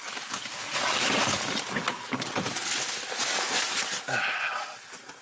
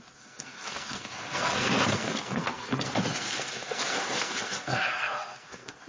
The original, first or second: first